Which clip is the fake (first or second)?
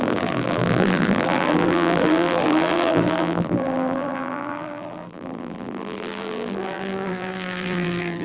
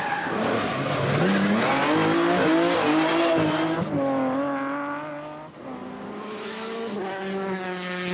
first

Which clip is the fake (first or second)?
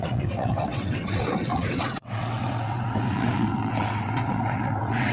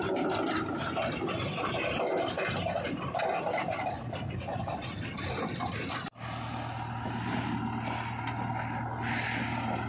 first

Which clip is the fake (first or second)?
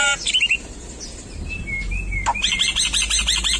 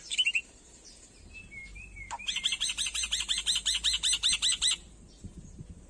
second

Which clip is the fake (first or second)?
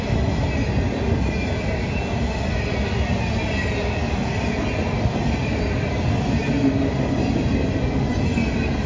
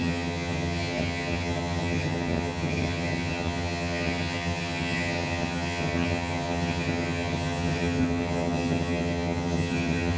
second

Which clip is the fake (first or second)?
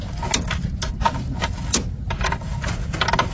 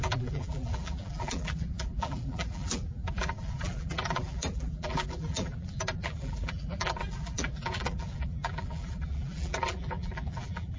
second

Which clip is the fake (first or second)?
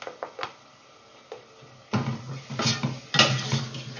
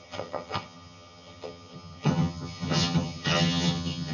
second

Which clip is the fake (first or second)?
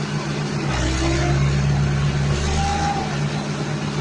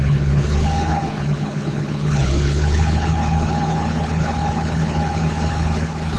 second